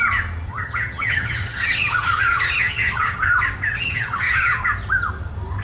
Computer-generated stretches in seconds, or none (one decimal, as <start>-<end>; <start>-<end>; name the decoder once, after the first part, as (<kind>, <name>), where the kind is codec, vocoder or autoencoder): 0.5-3.3 (vocoder, HiFi-GAN); 3.7-4.6